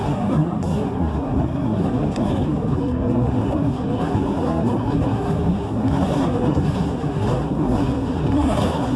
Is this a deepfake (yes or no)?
yes